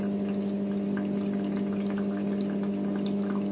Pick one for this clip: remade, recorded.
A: recorded